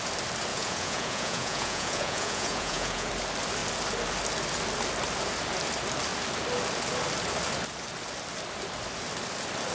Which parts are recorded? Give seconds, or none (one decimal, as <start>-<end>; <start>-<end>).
0.0-0.5; 3.1-9.7